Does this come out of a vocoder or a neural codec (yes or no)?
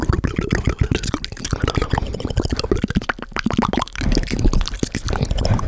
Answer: no